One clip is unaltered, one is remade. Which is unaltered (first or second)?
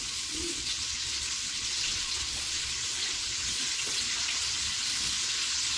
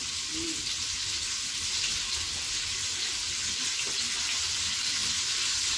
second